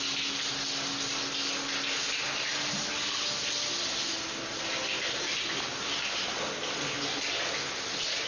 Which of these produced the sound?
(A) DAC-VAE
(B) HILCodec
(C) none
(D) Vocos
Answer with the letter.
C